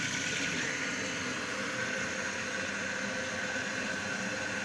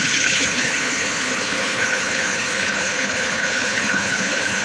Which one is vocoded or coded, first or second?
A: second